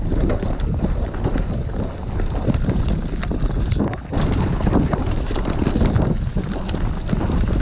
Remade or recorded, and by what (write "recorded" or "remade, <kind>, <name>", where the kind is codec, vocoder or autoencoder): recorded